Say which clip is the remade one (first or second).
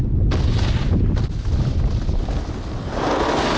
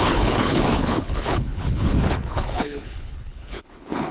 second